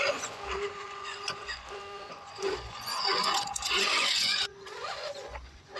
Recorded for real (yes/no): no